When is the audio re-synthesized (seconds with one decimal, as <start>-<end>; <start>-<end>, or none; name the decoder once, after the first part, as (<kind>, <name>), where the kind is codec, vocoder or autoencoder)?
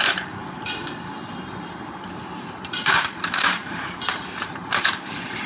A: 0.0-5.5 (vocoder, BigVGAN v2)